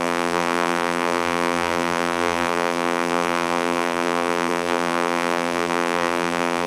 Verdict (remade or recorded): remade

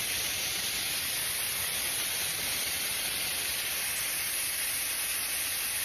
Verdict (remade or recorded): remade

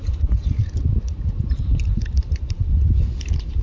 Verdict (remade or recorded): remade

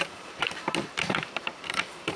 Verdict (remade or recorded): remade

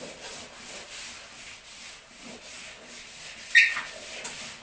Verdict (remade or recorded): remade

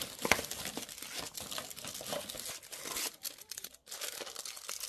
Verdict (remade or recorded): recorded